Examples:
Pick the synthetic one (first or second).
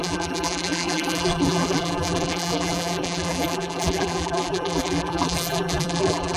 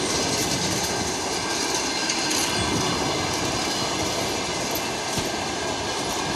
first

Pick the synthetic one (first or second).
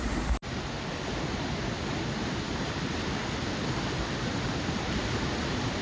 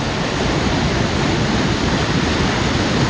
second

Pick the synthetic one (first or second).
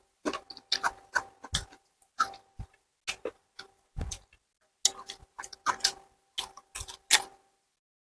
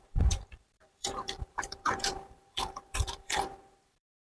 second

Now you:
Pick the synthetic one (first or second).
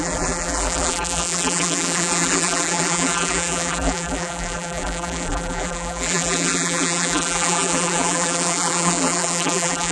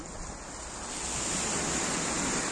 first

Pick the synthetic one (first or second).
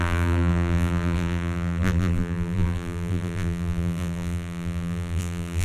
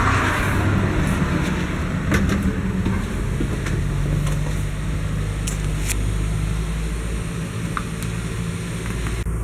first